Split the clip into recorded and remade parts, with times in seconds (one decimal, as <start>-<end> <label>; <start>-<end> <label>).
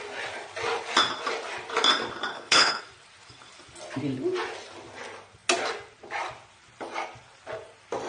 0.0-2.3 recorded; 2.3-2.8 remade; 2.8-8.1 recorded